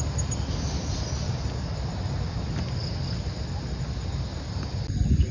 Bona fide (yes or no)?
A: yes